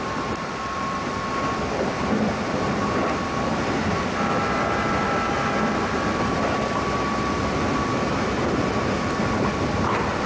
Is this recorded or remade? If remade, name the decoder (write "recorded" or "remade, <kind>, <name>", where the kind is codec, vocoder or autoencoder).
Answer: recorded